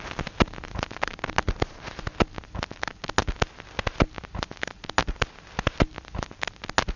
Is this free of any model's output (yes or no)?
yes